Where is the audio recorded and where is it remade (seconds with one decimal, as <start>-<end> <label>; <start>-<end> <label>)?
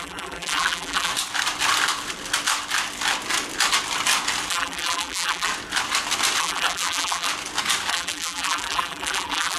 0.0-1.1 remade; 1.1-4.5 recorded; 4.5-5.5 remade; 5.5-6.4 recorded; 6.4-7.3 remade; 7.3-7.9 recorded; 7.9-9.6 remade